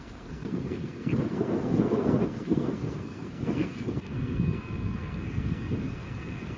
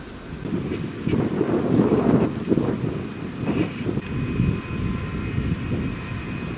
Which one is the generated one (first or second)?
first